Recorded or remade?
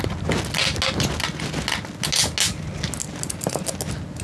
recorded